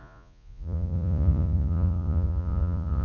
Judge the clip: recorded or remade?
remade